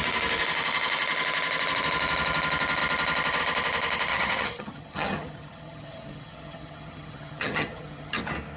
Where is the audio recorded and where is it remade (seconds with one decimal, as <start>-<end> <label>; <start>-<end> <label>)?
0.0-4.1 recorded; 4.1-8.2 remade; 8.2-8.6 recorded